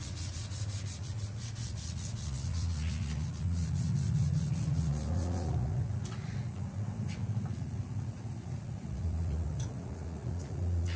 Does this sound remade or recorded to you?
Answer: remade